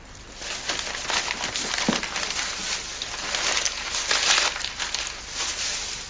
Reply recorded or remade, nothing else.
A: recorded